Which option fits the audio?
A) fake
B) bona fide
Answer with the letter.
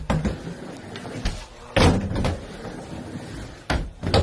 B